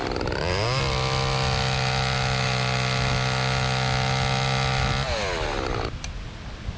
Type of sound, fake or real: real